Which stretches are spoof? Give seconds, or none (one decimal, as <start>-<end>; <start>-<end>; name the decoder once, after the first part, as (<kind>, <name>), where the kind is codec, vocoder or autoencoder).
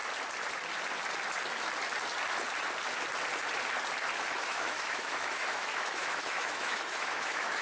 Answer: 4.3-7.6 (autoencoder, DAC-VAE)